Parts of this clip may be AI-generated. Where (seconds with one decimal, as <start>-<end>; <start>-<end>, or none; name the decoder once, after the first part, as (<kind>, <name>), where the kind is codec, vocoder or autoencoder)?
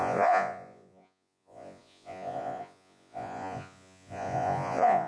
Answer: 0.0-5.1 (vocoder, Vocos)